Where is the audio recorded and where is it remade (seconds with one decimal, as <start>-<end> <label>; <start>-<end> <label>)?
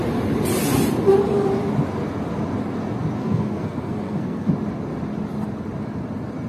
0.0-3.2 recorded; 3.2-4.5 remade; 4.5-6.5 recorded